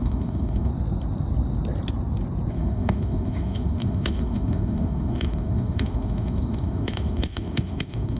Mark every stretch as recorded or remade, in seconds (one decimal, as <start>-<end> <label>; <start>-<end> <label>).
0.0-0.7 remade; 0.7-2.5 recorded; 2.5-8.2 remade